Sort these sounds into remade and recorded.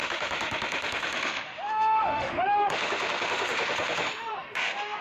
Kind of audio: remade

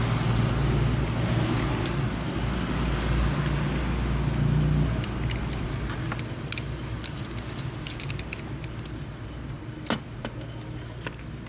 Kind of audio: recorded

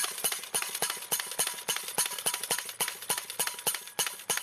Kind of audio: recorded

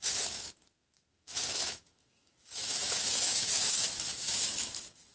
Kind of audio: remade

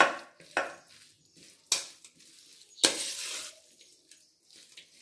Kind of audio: recorded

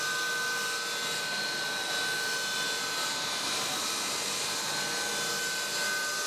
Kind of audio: recorded